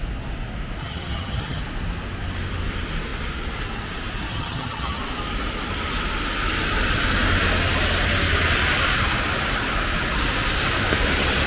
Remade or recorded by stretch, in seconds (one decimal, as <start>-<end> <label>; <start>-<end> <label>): 0.0-0.8 recorded; 0.8-1.6 remade; 1.6-4.3 recorded; 4.3-5.0 remade; 5.0-11.5 recorded